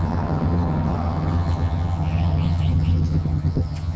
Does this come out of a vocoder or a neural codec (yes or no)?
yes